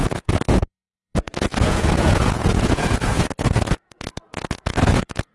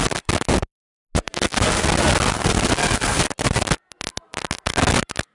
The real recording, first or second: second